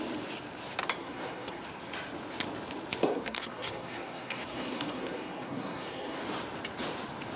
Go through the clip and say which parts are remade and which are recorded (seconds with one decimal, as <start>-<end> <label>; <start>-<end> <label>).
0.0-1.0 recorded; 1.0-1.6 remade; 1.6-3.0 recorded; 3.0-6.2 remade; 6.2-7.4 recorded